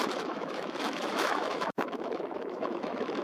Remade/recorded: remade